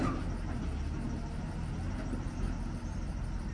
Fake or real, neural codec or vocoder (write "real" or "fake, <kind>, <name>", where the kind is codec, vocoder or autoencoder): real